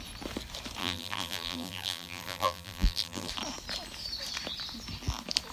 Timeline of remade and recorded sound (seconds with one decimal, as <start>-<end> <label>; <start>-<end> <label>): 0.0-0.8 recorded; 0.8-3.3 remade; 3.3-5.5 recorded